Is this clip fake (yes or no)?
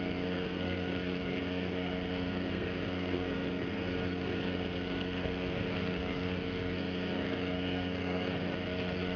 yes